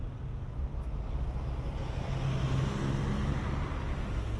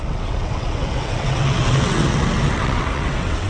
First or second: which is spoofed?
second